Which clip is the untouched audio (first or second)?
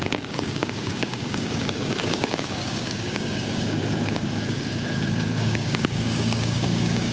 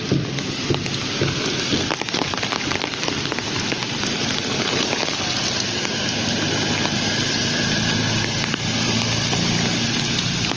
second